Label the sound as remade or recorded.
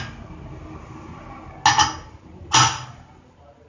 recorded